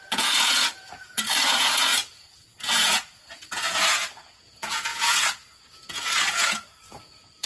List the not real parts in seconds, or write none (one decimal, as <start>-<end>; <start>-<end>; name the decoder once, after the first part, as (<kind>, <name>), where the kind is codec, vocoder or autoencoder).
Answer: 0.0-7.5 (vocoder, Vocos)